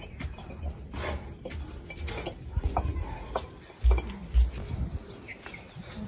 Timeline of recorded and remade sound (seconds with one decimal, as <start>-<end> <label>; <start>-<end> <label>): 0.0-6.1 recorded